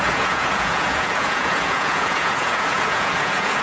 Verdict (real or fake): fake